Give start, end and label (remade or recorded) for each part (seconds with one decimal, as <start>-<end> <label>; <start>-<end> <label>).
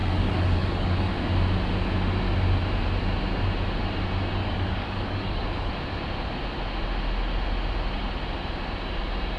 0.0-1.1 remade; 1.1-4.4 recorded; 4.4-5.7 remade; 5.7-9.4 recorded